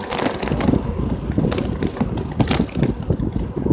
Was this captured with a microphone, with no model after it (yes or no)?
yes